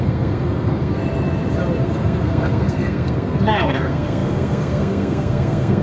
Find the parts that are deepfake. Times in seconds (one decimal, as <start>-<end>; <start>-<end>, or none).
0.0-1.0; 1.8-5.8